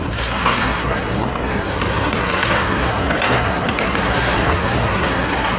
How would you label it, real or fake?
fake